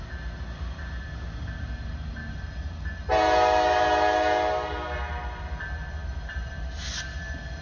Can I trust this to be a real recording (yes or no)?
yes